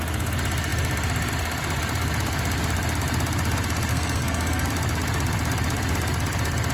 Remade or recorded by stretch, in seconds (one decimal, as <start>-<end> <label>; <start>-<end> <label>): 0.0-3.9 recorded; 3.9-4.7 remade; 4.7-6.7 recorded

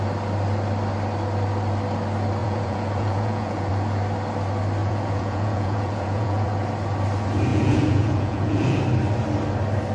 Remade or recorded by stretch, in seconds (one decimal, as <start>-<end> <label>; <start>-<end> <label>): 0.0-2.4 recorded; 2.4-3.7 remade; 3.7-4.8 recorded; 4.8-6.5 remade; 6.5-7.5 recorded; 7.5-8.8 remade; 8.8-9.9 recorded

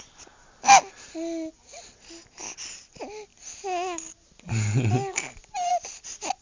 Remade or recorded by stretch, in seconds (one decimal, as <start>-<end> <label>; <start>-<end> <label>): 0.0-6.4 recorded

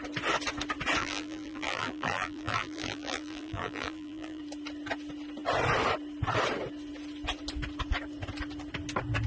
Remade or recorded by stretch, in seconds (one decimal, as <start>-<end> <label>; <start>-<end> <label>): 0.0-1.0 recorded; 1.0-4.4 remade; 4.4-9.3 recorded

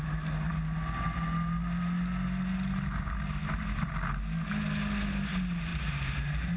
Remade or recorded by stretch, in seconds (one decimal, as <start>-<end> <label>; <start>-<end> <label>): 0.0-5.7 recorded; 5.7-6.6 remade

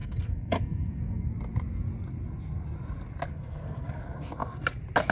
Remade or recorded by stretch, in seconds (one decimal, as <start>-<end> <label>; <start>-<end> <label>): 0.0-1.3 remade; 1.3-3.3 recorded; 3.3-4.0 remade; 4.0-5.1 recorded

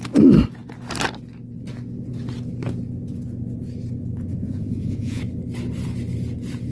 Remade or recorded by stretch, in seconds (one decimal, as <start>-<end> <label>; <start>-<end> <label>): 0.0-4.3 recorded; 4.3-5.2 remade; 5.2-6.7 recorded

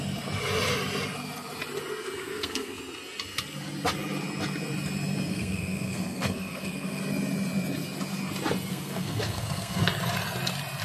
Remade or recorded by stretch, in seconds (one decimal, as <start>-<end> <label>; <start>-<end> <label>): 0.0-2.2 recorded; 2.2-2.8 remade; 2.8-5.3 recorded; 5.3-7.0 remade; 7.0-8.7 recorded; 8.7-9.8 remade; 9.8-10.8 recorded